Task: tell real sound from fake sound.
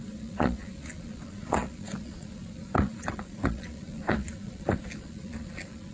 fake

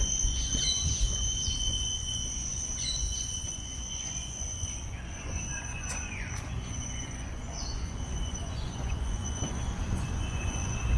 fake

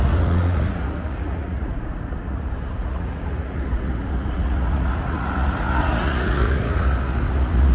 fake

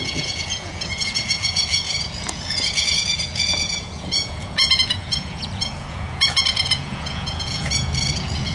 fake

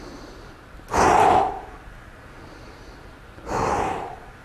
real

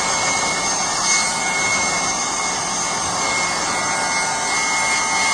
real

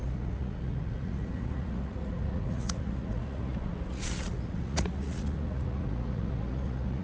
fake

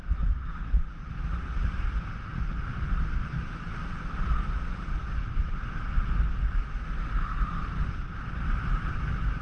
real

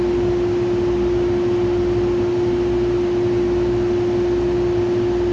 real